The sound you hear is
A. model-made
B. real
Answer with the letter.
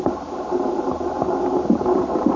B